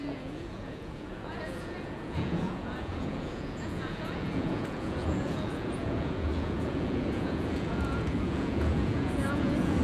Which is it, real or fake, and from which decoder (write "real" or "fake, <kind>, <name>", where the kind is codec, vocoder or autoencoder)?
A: fake, vocoder, Vocos